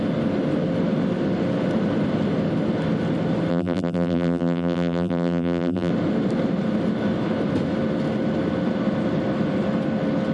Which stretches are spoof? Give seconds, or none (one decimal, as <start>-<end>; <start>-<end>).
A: 3.5-5.9